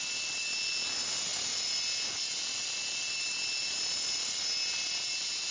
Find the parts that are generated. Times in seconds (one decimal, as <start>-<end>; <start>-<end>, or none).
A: none